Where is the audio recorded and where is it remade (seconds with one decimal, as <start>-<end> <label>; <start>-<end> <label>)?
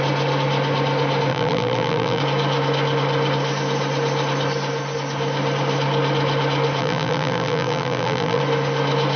0.0-1.3 recorded; 1.3-2.2 remade; 2.2-6.8 recorded; 6.8-8.4 remade; 8.4-9.2 recorded